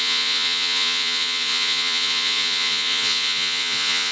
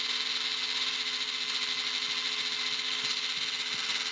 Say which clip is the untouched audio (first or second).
second